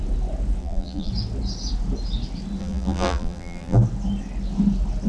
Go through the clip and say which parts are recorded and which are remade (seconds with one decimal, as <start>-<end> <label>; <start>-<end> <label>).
0.0-0.6 recorded; 0.6-1.1 remade; 1.1-2.6 recorded; 2.6-3.8 remade; 3.8-5.1 recorded

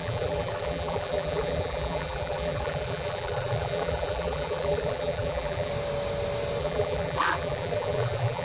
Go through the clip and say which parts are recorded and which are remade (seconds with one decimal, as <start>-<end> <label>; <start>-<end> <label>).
0.0-5.7 remade; 5.7-6.6 recorded; 6.6-8.4 remade

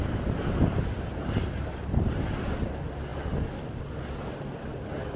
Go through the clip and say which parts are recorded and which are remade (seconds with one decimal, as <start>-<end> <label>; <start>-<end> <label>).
0.0-2.1 remade; 2.1-5.2 recorded

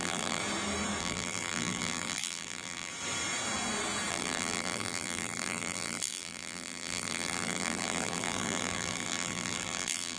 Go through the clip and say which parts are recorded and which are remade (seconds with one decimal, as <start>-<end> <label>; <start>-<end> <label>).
0.0-0.4 remade; 0.4-1.0 recorded; 1.0-2.9 remade; 2.9-4.1 recorded; 4.1-10.2 remade

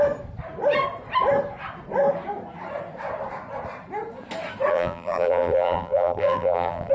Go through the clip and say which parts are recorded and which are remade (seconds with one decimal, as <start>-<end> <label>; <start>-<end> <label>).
0.0-4.7 recorded; 4.7-6.9 remade